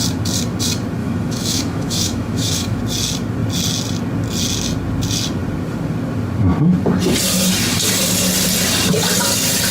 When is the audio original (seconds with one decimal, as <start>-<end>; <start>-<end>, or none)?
0.0-1.0; 2.8-9.7